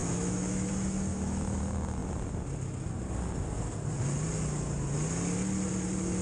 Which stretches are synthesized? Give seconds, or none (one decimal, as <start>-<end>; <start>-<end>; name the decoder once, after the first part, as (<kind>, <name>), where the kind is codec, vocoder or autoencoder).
0.0-0.7 (autoencoder, DAC-VAE); 1.1-1.6